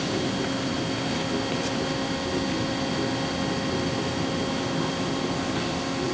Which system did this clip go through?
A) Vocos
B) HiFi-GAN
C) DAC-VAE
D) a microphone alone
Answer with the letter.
D